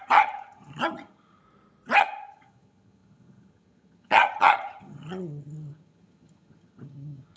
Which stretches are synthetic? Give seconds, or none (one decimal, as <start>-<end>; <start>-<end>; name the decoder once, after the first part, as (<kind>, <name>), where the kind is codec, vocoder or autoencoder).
0.0-1.4 (vocoder, HiFi-GAN); 2.0-7.4